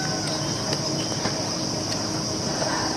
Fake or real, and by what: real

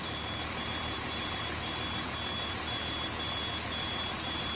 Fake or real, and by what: fake, vocoder, BigVGAN v2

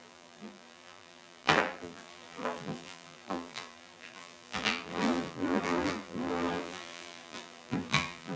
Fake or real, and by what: fake, vocoder, BigVGAN v2